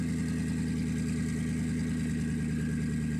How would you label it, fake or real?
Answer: real